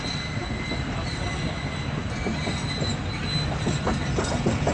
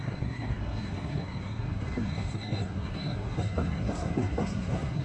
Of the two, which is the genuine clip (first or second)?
first